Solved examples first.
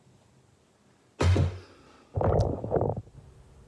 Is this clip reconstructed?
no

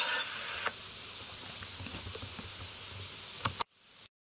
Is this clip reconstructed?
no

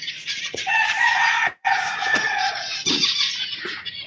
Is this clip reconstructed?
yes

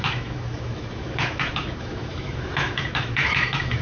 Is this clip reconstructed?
yes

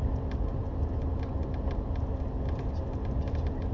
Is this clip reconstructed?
no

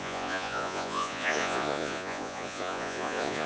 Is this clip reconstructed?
yes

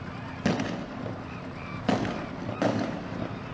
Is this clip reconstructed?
no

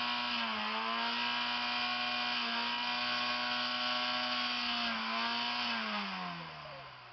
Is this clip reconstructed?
no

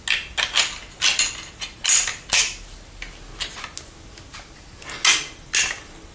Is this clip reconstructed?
no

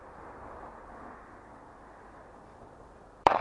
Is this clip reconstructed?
yes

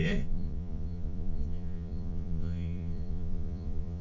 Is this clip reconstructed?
yes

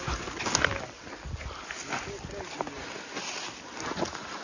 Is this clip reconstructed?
no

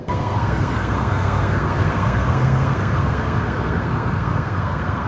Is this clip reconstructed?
yes